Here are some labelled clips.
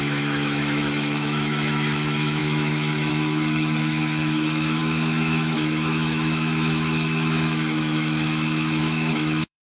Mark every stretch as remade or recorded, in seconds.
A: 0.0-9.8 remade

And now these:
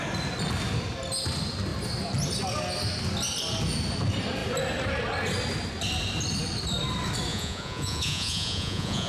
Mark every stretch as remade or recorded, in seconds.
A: 0.0-7.3 recorded; 7.3-9.1 remade

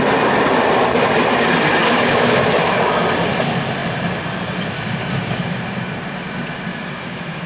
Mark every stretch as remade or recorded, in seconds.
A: 0.0-1.8 recorded; 1.8-2.8 remade; 2.8-6.7 recorded; 6.7-7.5 remade

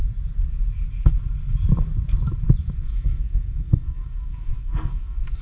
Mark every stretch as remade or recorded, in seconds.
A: 0.0-2.8 recorded; 2.8-5.4 remade

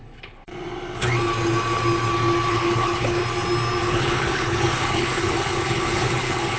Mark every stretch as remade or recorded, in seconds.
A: 0.0-0.5 remade; 0.5-2.5 recorded; 2.5-3.2 remade; 3.2-3.8 recorded; 3.8-6.6 remade